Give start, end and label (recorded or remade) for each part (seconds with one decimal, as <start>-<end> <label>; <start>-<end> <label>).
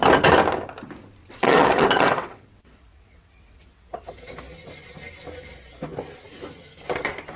0.0-1.2 recorded; 1.2-4.4 remade; 4.4-7.4 recorded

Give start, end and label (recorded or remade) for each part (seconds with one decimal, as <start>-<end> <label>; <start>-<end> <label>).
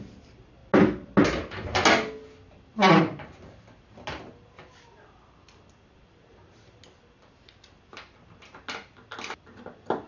0.0-10.1 recorded